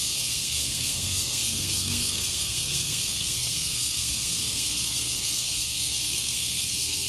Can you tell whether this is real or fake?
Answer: fake